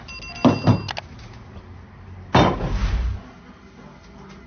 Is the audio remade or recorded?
recorded